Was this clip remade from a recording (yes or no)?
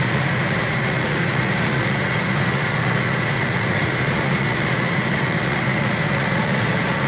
yes